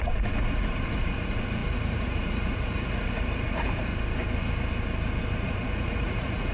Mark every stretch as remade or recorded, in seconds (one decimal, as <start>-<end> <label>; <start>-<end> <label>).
0.0-3.9 remade; 3.9-5.4 recorded; 5.4-6.5 remade